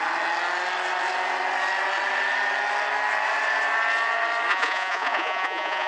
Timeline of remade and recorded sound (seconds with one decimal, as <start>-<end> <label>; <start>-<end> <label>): 0.0-4.5 recorded; 4.5-5.9 remade